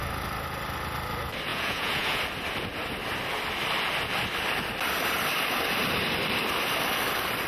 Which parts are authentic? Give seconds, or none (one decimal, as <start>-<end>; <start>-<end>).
0.0-1.5; 2.2-7.5